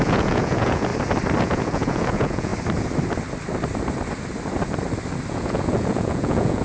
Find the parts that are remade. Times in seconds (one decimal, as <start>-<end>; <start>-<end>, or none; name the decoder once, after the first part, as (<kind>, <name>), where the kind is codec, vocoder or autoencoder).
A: 0.0-0.9 (vocoder, Vocos); 1.4-2.5; 5.3-6.6